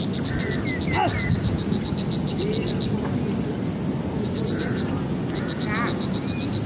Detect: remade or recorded recorded